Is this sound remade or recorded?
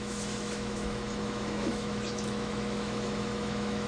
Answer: remade